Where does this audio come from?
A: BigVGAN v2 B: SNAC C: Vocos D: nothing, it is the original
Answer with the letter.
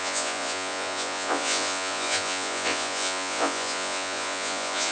C